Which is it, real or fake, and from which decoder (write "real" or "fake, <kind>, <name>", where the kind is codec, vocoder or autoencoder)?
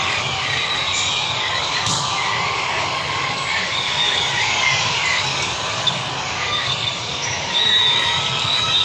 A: fake, codec, DAC